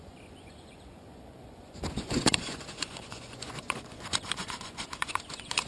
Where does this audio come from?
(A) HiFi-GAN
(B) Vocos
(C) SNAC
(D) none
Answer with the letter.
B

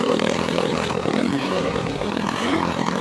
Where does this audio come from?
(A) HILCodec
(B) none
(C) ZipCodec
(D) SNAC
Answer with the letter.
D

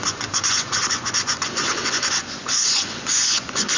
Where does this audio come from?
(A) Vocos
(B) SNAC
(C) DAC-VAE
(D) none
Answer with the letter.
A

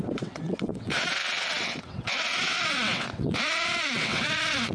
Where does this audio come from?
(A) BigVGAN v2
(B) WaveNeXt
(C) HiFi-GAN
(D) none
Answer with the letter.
B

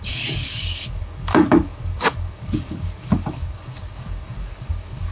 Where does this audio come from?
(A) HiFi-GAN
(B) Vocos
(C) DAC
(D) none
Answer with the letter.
C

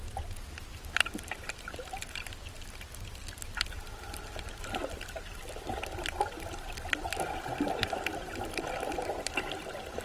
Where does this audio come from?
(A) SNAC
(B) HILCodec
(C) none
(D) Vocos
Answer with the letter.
C